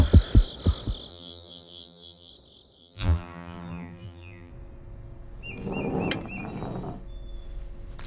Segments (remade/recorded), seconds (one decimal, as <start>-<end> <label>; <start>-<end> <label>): 0.0-1.1 recorded; 1.1-2.3 remade; 2.3-2.8 recorded; 2.8-4.5 remade; 4.5-8.1 recorded